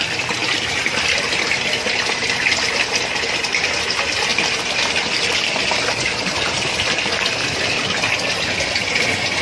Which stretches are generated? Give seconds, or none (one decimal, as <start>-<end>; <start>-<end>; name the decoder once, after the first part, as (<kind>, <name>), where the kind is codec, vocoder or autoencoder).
4.3-7.8 (vocoder, BigVGAN v2)

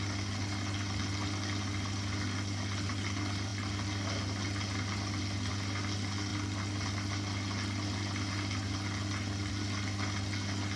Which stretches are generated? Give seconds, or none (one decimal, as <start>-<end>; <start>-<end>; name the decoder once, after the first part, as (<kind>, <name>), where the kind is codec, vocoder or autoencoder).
none

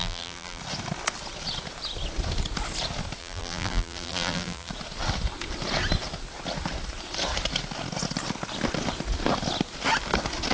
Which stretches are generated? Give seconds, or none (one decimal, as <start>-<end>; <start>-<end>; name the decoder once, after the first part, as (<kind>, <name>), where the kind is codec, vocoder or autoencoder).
0.0-0.6 (vocoder, BigVGAN v2); 3.2-4.7

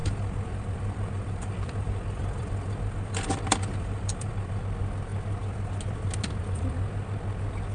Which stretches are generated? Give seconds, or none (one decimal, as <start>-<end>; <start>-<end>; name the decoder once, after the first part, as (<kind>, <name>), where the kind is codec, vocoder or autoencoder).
0.0-4.6 (vocoder, BigVGAN v2)

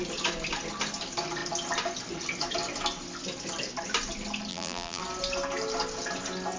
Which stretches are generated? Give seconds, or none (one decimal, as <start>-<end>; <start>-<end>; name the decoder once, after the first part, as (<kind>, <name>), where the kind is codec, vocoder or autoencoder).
4.5-5.0 (vocoder, BigVGAN v2)

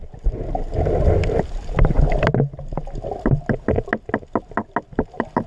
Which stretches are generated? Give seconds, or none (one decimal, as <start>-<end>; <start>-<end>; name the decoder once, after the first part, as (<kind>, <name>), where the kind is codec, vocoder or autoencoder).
none

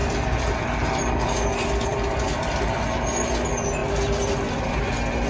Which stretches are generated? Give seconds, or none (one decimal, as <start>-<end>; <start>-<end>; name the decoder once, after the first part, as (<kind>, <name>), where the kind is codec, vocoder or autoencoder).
0.0-1.1 (vocoder, BigVGAN v2); 1.9-2.5